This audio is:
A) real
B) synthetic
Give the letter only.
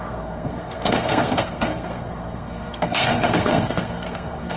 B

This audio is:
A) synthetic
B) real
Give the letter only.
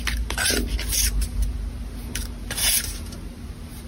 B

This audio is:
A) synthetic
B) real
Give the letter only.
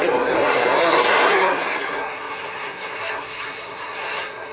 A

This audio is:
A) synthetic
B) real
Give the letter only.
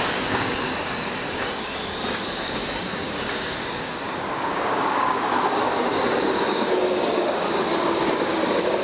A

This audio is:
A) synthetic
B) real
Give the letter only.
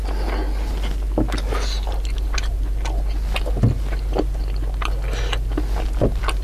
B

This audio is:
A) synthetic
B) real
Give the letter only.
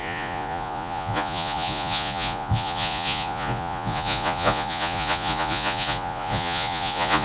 A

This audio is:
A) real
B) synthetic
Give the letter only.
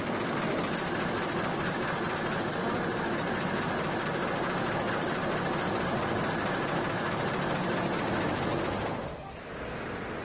A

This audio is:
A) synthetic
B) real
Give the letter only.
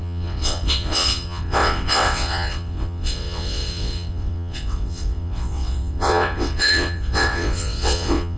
A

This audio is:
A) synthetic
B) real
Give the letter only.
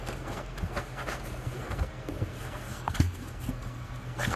A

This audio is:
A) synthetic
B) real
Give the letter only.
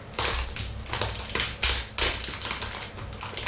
B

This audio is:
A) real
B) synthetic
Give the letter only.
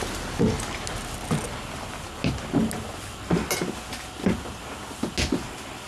A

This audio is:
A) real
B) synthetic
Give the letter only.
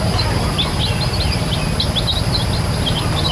A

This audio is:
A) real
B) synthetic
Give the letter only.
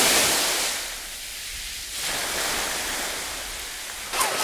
A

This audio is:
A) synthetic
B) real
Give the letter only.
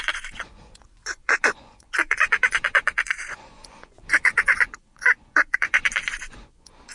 A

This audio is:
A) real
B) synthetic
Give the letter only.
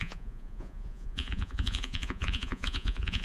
B